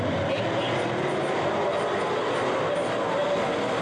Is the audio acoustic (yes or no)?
yes